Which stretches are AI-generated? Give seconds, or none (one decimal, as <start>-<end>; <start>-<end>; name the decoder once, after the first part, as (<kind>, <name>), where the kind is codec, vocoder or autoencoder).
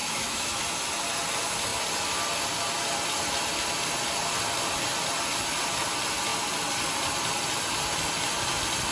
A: 0.0-0.6 (autoencoder, DAC-VAE)